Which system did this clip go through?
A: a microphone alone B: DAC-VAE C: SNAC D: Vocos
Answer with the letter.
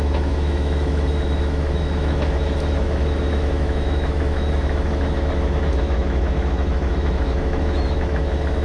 B